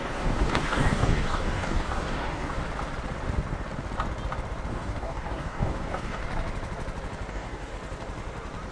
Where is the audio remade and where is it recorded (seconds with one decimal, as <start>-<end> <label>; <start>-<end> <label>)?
0.0-2.6 remade; 2.6-4.7 recorded; 4.7-6.2 remade; 6.2-7.3 recorded; 7.3-7.7 remade; 7.7-8.7 recorded